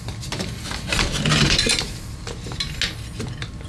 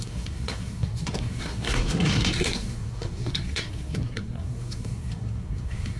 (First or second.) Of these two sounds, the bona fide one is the first